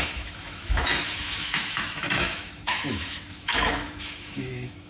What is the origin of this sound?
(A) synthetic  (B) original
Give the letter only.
A